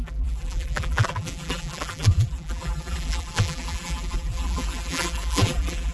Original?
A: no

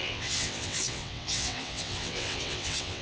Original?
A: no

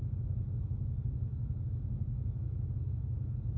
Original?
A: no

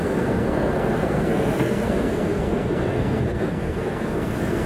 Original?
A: no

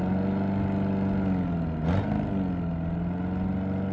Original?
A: yes